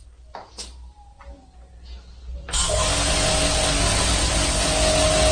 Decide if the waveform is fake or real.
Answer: real